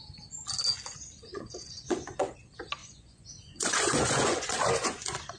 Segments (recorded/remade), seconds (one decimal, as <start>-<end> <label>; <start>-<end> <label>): 0.0-1.3 recorded; 1.3-2.3 remade; 2.3-2.8 recorded; 2.8-5.4 remade